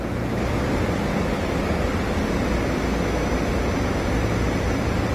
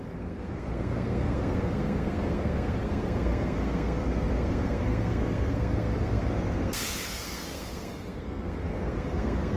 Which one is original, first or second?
first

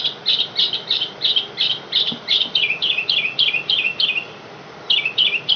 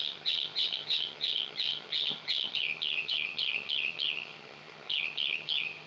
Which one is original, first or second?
first